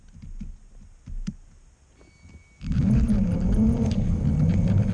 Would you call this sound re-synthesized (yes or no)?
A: no